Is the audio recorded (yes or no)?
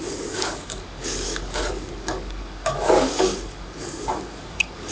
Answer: no